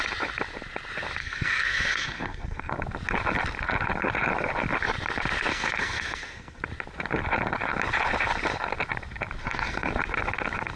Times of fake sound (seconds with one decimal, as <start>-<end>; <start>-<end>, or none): 1.2-2.7; 5.5-6.6; 9.4-9.9